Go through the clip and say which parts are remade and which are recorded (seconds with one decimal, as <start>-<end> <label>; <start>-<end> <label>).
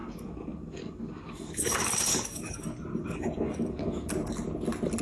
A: 0.0-2.6 remade; 2.6-3.0 recorded; 3.0-4.1 remade; 4.1-5.0 recorded